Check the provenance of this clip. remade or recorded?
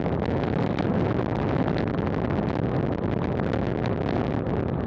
recorded